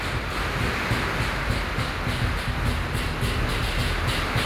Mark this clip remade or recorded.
recorded